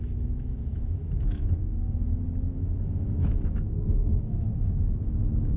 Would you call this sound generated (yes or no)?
yes